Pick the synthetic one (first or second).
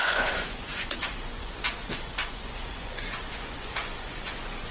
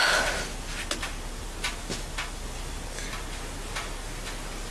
first